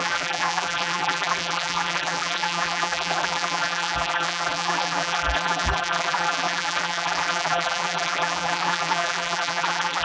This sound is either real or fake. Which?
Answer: fake